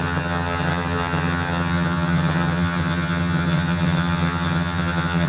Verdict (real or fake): fake